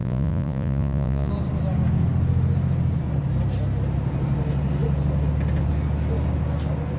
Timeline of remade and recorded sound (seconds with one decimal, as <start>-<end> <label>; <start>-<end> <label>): 0.0-1.3 remade; 1.3-7.0 recorded